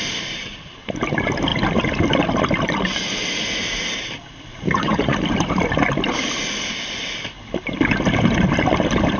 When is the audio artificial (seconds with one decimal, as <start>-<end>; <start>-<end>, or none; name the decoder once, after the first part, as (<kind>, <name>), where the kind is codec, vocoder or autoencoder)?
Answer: 4.5-5.2 (vocoder, Vocos)